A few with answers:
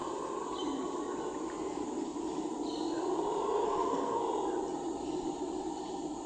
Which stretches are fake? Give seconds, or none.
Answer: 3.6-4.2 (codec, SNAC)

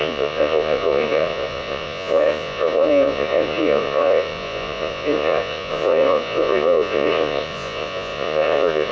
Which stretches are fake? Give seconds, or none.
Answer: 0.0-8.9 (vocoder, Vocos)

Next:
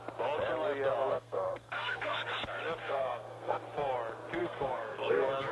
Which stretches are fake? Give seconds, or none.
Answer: 1.1-2.3 (codec, SNAC); 2.8-3.6; 4.4-5.5

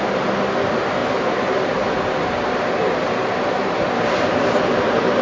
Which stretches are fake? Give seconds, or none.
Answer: 0.0-5.2 (vocoder, BigVGAN v2)